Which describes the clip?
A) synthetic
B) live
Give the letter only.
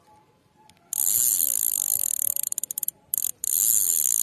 B